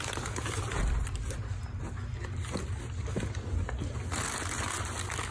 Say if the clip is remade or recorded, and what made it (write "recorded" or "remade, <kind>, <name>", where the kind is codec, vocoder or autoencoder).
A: recorded